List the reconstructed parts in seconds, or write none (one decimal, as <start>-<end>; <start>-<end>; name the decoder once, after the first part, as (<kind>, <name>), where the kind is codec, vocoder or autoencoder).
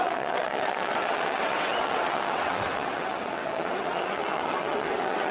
0.0-5.3 (vocoder, WaveNeXt)